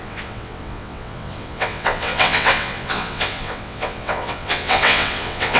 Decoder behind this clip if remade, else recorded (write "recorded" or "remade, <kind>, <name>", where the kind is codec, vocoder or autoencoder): remade, vocoder, WaveNeXt